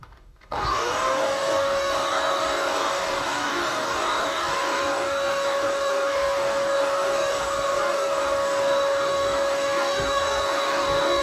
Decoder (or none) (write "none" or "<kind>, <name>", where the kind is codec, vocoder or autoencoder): codec, DAC